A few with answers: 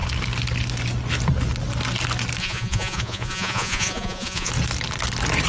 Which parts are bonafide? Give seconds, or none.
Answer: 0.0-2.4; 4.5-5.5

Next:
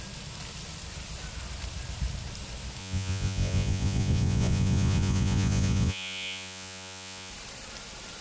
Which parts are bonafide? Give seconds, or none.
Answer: 0.0-2.8; 7.3-8.2

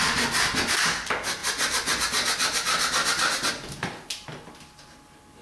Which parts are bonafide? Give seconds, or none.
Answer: 0.0-5.4

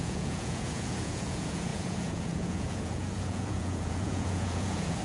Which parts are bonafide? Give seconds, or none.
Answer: none

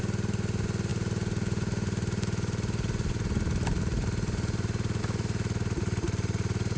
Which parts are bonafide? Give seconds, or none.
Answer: 0.0-6.8

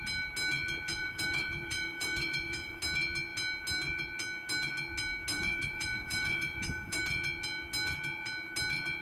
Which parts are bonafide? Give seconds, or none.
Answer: 0.0-0.9; 2.8-5.3; 7.0-9.0